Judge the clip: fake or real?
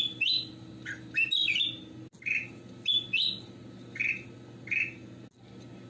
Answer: real